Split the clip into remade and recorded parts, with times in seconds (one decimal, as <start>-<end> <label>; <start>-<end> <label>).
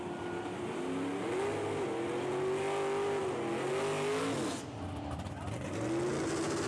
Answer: 0.0-6.7 recorded